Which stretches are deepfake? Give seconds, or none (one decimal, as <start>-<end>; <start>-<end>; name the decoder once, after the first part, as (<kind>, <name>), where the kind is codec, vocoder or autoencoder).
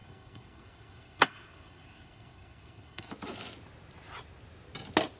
0.0-3.1 (codec, SNAC)